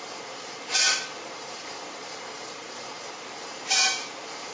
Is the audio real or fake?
fake